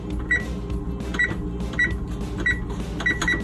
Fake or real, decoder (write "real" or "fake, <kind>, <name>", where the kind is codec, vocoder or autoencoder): real